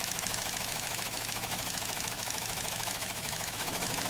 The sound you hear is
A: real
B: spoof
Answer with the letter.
B